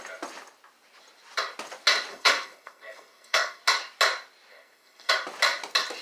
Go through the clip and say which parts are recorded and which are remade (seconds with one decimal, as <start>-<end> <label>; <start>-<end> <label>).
0.0-2.1 recorded; 2.1-3.6 remade; 3.6-4.5 recorded; 4.5-5.1 remade; 5.1-6.0 recorded